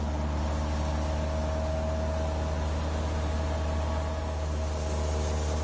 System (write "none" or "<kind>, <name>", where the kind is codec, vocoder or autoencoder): none